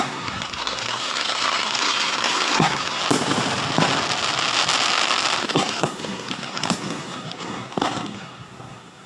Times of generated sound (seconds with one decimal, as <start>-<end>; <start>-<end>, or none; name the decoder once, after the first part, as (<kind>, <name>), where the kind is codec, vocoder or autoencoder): 0.0-3.0 (codec, SNAC); 5.4-9.1